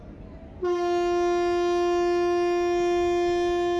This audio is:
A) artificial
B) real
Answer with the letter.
B